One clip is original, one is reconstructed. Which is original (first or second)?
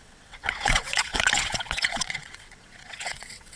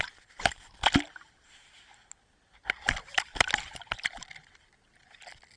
second